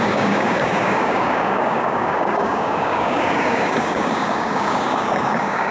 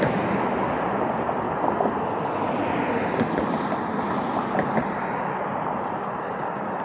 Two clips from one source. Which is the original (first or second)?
second